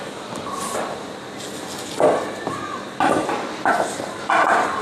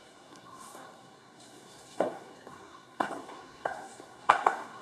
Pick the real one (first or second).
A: first